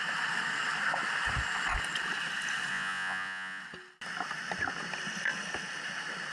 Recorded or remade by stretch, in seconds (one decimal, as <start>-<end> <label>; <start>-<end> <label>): 0.0-2.7 recorded; 2.7-3.6 remade; 3.6-6.3 recorded

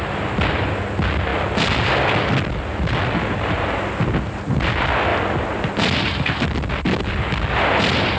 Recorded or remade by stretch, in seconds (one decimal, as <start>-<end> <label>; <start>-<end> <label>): 0.0-8.2 recorded

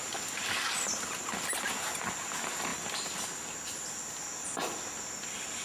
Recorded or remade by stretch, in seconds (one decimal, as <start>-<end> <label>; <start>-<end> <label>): 0.0-5.6 recorded

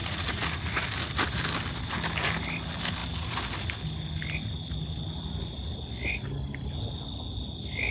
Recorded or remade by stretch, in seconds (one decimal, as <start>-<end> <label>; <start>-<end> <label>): 0.0-0.5 remade; 0.5-7.9 recorded